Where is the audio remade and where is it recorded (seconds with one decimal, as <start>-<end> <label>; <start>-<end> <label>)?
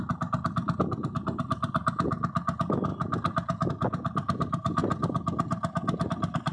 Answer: 0.0-6.5 recorded